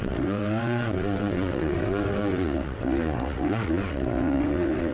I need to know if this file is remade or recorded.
remade